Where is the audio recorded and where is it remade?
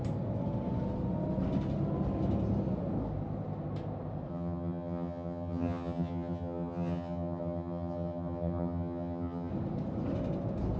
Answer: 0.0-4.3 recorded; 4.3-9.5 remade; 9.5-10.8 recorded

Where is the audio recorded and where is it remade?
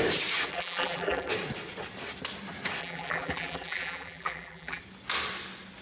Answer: 0.0-0.5 recorded; 0.5-1.3 remade; 1.3-2.8 recorded; 2.8-4.8 remade; 4.8-5.8 recorded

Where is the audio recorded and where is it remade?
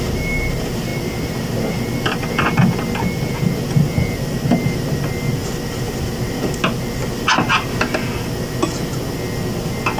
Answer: 0.0-10.0 recorded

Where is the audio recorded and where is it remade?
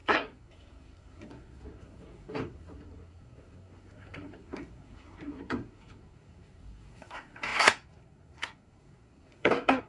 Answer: 0.0-9.9 remade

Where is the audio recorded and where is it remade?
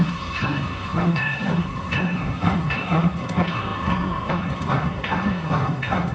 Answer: 0.0-6.1 remade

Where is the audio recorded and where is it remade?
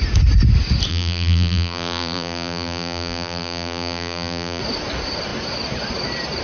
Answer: 0.0-0.9 recorded; 0.9-4.6 remade; 4.6-6.4 recorded